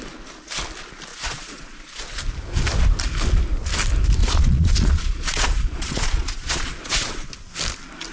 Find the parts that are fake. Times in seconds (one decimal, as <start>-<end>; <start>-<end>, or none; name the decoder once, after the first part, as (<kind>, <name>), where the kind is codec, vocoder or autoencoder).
1.1-2.2 (vocoder, Vocos); 4.2-7.3